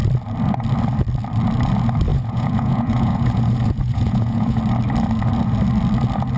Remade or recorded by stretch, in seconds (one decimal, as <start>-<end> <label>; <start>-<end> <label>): 0.0-2.1 recorded; 2.1-4.6 remade; 4.6-6.4 recorded

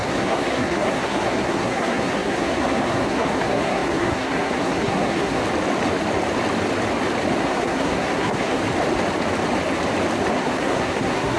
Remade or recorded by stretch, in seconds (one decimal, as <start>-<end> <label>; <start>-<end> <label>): 0.0-5.4 remade; 5.4-7.4 recorded; 7.4-8.6 remade; 8.6-10.3 recorded; 10.3-11.4 remade

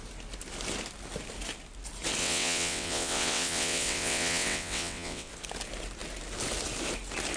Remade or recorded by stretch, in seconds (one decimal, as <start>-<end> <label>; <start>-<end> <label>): 0.0-2.2 recorded; 2.2-5.3 remade; 5.3-7.4 recorded